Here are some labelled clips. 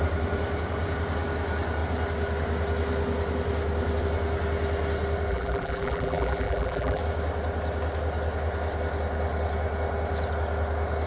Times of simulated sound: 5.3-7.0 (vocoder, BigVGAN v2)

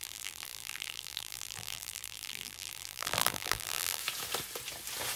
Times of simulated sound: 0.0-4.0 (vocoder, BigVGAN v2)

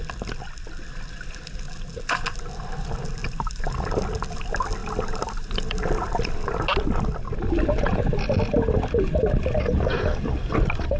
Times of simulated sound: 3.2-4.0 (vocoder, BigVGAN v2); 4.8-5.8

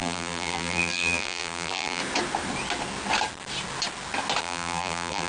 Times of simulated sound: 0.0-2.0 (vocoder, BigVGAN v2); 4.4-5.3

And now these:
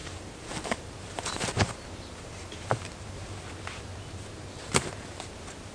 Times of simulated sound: 0.0-3.4 (vocoder, BigVGAN v2)

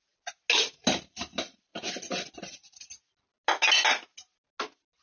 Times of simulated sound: none

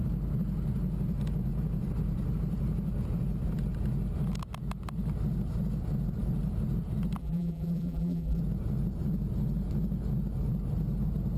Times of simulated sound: 7.2-8.4 (vocoder, BigVGAN v2)